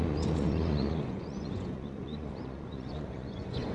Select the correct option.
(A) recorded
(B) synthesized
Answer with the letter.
B